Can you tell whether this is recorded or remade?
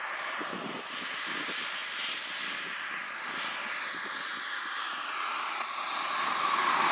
recorded